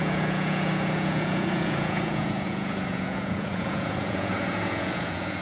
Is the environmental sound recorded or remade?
remade